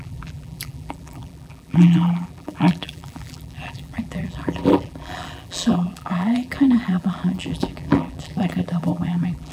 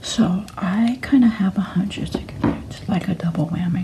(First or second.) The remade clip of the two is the first